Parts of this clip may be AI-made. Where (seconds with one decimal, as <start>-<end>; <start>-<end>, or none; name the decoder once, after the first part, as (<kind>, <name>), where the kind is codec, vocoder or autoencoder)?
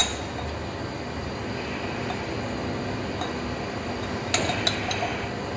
none